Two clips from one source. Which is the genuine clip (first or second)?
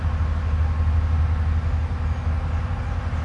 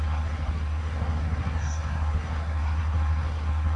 first